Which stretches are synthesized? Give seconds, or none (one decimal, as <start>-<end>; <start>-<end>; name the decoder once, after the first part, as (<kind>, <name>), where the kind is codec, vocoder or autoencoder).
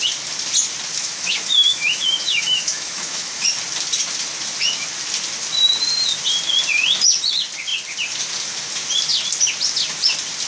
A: 1.0-3.4 (autoencoder, DAC-VAE)